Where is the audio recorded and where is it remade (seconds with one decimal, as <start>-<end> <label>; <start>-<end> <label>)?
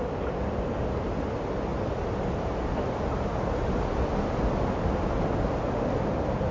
0.0-6.5 recorded